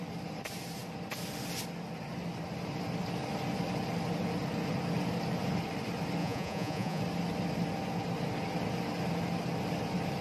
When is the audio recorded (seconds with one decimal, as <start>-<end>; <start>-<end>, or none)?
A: 0.0-6.2; 7.0-10.2